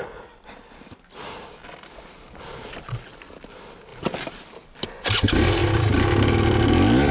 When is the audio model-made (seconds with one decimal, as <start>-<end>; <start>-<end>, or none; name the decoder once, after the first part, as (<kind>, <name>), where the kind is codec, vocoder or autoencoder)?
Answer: none